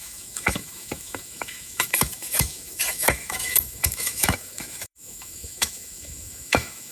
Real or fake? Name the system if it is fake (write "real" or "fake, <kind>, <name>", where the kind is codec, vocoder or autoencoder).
fake, autoencoder, DAC-VAE